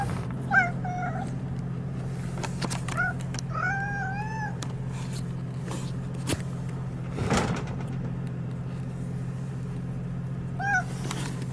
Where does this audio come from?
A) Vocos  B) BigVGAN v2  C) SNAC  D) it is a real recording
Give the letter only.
B